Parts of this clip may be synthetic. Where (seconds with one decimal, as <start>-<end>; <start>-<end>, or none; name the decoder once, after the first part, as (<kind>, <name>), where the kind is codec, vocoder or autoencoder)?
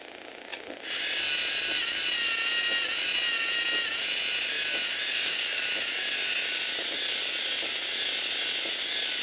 5.1-5.6 (codec, DAC)